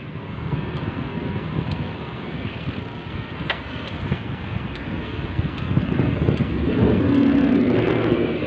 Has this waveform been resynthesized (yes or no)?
yes